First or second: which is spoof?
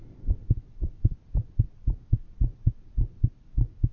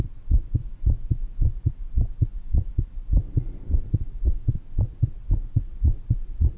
second